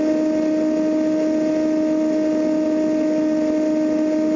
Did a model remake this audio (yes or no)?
no